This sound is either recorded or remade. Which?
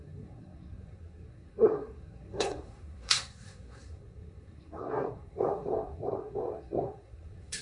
remade